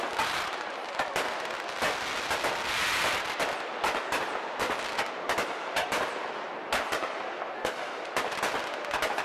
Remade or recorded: recorded